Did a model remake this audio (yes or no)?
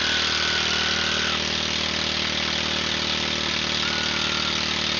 no